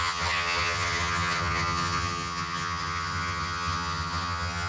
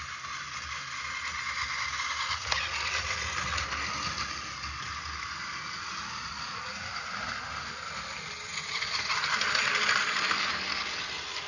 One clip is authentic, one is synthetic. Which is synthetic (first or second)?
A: first